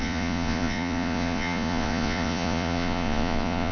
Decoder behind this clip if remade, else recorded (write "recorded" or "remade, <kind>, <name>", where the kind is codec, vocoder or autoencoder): remade, vocoder, Vocos